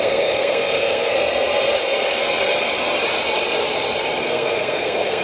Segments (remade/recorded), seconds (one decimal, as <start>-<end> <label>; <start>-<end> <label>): 0.0-1.1 remade; 1.1-4.2 recorded; 4.2-5.2 remade